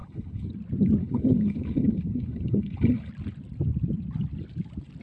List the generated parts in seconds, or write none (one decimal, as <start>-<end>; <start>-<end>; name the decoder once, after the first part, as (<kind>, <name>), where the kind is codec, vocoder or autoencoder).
0.0-0.5 (codec, HILCodec); 1.0-3.1